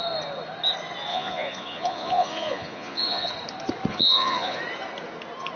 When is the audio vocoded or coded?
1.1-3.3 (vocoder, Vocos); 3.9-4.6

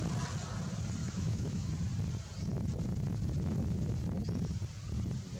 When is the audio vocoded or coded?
1.0-1.7 (autoencoder, DAC-VAE)

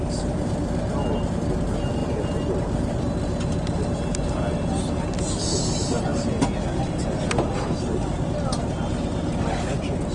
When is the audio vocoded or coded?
none